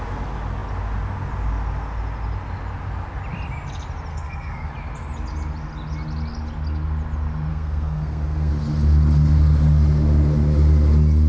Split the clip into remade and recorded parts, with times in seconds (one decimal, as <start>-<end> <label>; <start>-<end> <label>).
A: 0.0-4.1 recorded; 4.1-4.7 remade; 4.7-7.5 recorded; 7.5-8.5 remade; 8.5-11.3 recorded